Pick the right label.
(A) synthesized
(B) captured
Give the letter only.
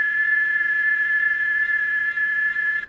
A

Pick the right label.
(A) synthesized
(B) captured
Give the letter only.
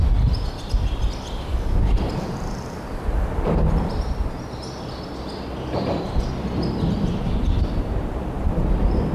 B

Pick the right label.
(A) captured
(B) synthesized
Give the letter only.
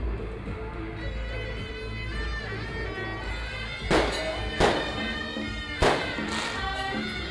A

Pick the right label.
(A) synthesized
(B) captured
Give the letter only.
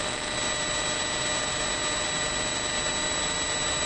B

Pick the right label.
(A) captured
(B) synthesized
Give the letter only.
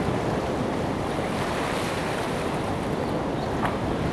A